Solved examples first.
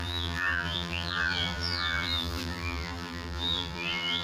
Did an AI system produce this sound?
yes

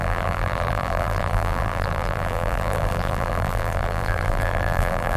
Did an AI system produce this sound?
yes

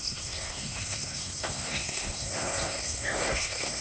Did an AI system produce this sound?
yes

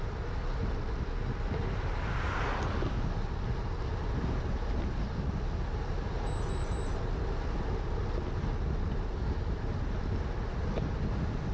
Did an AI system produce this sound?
no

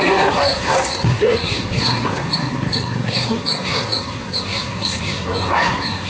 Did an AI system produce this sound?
yes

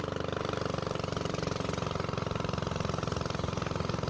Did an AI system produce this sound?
no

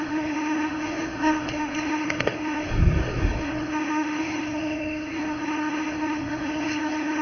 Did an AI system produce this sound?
yes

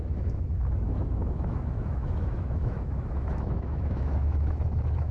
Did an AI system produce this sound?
yes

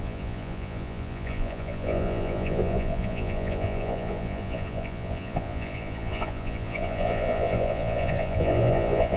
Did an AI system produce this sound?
yes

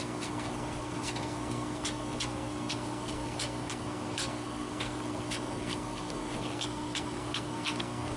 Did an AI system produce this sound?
yes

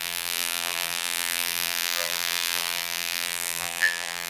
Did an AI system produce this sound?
yes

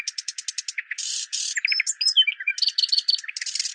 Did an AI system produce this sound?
no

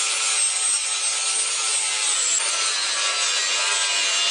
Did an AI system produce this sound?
no